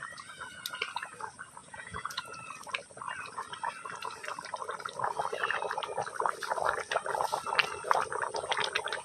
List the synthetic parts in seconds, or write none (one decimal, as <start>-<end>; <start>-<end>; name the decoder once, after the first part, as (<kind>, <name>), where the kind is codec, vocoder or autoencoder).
1.6-2.4 (vocoder, Vocos)